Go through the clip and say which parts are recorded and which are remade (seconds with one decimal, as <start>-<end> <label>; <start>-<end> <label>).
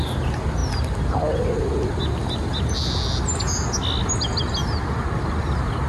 0.0-5.9 recorded